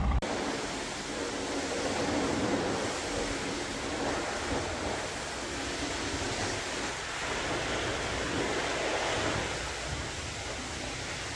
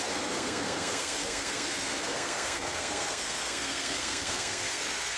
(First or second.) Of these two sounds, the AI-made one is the second